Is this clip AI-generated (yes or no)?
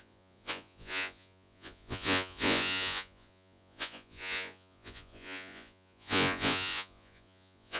yes